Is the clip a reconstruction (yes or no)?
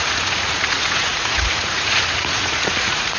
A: yes